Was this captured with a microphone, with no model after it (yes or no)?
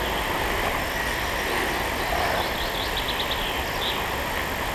yes